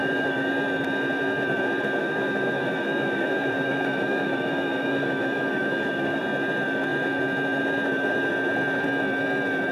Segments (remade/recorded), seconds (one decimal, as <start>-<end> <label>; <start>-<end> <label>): 0.0-0.5 remade; 0.5-2.0 recorded; 2.0-6.2 remade; 6.2-9.7 recorded